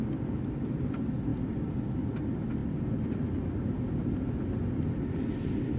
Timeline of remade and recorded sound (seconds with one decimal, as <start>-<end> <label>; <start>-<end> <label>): 0.0-5.8 recorded